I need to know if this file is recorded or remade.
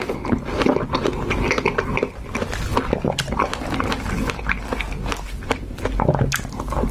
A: recorded